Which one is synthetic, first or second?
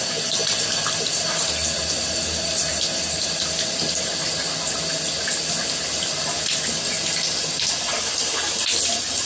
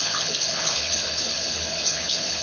second